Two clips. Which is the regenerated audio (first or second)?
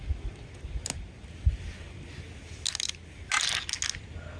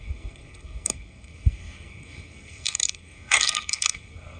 second